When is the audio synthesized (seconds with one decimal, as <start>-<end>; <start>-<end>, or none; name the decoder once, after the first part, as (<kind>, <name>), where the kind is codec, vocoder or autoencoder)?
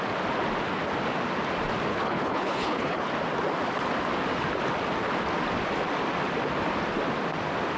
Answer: 1.9-3.1 (codec, HILCodec)